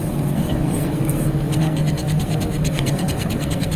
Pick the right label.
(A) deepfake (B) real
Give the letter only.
A